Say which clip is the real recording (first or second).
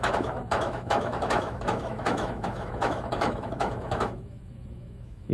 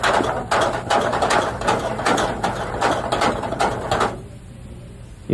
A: second